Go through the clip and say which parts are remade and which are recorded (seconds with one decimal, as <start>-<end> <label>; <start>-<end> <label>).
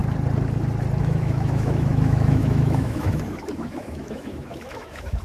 0.0-1.0 recorded; 1.0-5.2 remade